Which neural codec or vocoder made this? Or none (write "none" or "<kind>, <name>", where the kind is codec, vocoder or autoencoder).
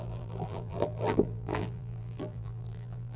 vocoder, BigVGAN v2